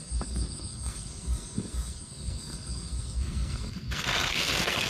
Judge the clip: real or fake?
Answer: fake